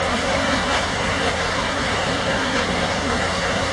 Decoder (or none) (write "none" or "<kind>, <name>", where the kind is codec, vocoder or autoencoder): codec, SNAC